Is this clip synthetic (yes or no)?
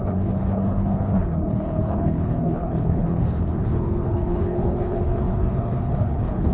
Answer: yes